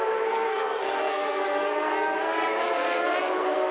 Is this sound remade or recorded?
remade